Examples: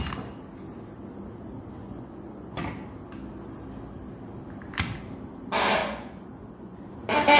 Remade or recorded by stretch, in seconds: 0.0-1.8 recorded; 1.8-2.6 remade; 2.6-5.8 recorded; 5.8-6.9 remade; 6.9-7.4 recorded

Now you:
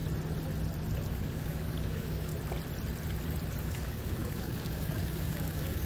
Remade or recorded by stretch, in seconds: 0.0-1.1 recorded; 1.1-2.3 remade; 2.3-3.6 recorded; 3.6-5.9 remade

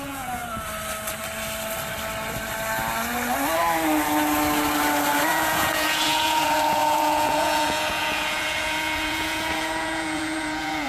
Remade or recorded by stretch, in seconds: 0.0-0.4 remade; 0.4-5.3 recorded; 5.3-10.9 remade

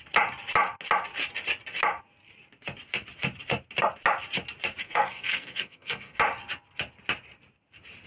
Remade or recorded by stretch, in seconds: 0.0-4.8 recorded; 4.8-6.2 remade; 6.2-8.1 recorded